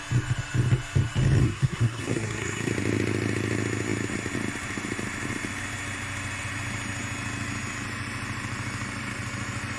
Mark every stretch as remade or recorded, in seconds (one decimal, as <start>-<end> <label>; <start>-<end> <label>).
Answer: 0.0-1.4 recorded; 1.4-2.7 remade; 2.7-9.8 recorded